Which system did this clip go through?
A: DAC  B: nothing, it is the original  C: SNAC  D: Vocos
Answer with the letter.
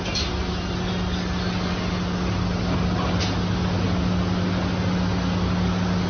B